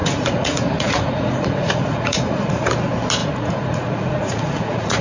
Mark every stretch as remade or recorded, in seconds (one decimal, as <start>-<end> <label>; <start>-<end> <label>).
0.0-2.7 remade; 2.7-3.2 recorded; 3.2-5.0 remade